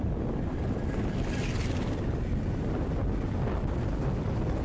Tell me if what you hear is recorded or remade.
recorded